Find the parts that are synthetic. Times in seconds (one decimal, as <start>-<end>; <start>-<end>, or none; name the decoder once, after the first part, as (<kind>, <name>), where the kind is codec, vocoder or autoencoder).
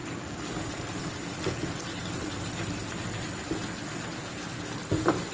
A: none